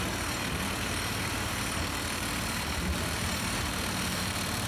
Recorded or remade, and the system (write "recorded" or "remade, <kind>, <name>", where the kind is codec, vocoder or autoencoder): remade, vocoder, BigVGAN v2